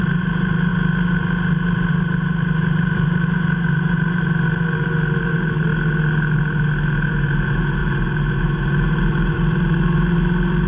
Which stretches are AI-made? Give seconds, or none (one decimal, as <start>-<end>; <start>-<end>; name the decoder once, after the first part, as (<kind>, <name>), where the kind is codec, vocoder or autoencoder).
0.0-0.7 (vocoder, BigVGAN v2); 1.9-5.7; 7.1-10.7